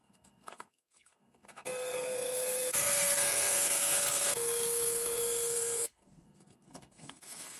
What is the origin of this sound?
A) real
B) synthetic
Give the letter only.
B